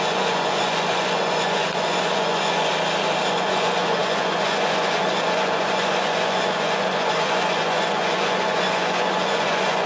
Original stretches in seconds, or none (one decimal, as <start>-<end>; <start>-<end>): 2.7-3.3